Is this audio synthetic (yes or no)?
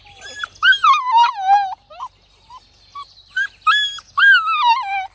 no